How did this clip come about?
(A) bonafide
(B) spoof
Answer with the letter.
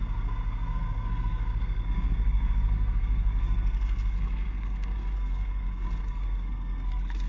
B